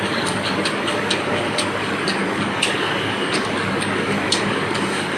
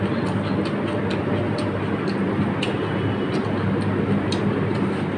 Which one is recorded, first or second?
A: second